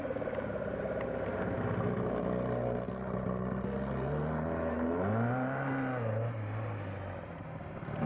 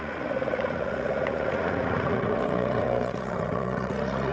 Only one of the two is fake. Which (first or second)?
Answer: second